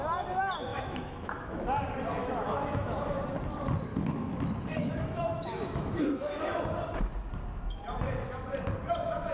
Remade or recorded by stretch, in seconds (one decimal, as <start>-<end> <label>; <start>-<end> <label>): 0.0-0.7 recorded; 0.7-1.6 remade; 1.6-2.2 recorded; 2.2-3.2 remade; 3.2-3.9 recorded; 3.9-6.6 remade; 6.6-9.3 recorded